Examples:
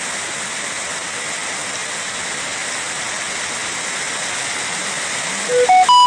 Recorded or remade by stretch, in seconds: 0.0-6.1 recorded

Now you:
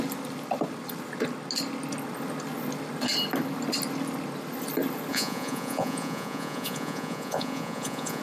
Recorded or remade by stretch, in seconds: 0.0-5.1 recorded; 5.1-8.2 remade

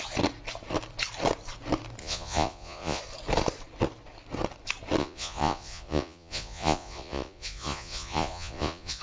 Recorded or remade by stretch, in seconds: 0.0-2.0 recorded; 2.0-3.0 remade; 3.0-5.0 recorded; 5.0-9.0 remade